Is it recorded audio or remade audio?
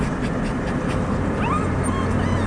recorded